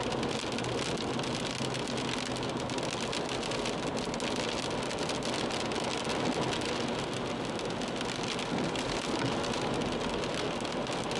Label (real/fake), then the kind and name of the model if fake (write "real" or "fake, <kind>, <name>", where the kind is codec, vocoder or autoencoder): real